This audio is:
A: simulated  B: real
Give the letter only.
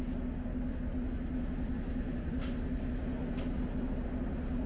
B